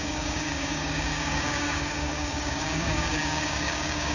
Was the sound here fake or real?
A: fake